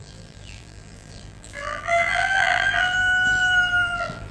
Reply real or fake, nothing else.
fake